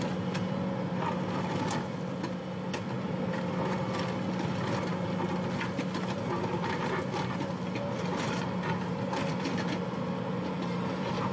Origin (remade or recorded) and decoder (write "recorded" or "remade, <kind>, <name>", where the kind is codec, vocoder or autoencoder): recorded